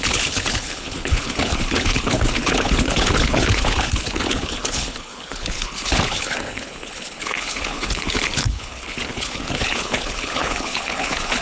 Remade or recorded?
remade